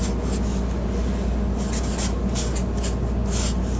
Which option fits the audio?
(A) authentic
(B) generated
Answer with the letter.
A